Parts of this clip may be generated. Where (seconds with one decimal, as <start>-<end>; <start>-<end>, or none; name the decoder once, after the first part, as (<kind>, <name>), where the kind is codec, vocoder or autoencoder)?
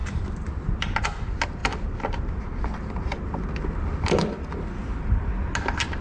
none